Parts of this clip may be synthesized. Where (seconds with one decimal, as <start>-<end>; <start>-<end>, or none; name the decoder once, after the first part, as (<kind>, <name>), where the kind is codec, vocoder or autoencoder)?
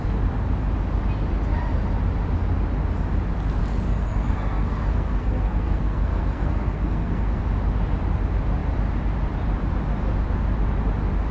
3.6-7.4 (codec, SNAC)